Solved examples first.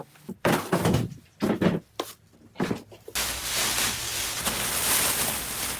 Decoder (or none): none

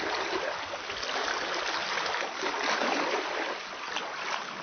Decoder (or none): none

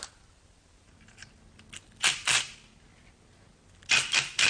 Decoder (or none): none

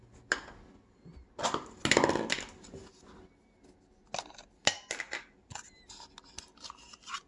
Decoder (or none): none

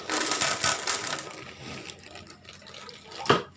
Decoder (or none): none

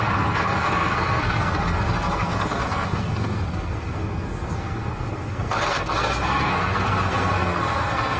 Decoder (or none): codec, SNAC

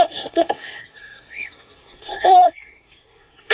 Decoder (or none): codec, SNAC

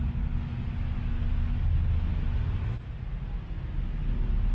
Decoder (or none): none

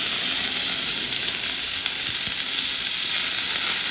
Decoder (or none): none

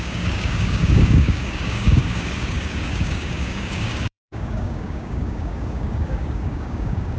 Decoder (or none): codec, DAC